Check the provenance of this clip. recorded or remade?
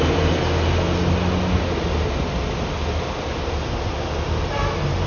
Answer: recorded